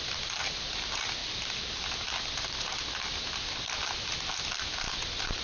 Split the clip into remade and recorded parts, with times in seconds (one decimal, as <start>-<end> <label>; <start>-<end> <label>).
0.0-5.4 recorded